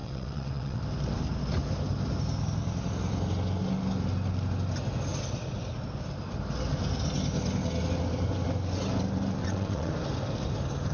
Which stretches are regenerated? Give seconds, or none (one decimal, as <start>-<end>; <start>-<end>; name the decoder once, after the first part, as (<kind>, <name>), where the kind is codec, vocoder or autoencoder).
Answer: 0.0-0.8 (vocoder, WaveNeXt); 9.4-9.9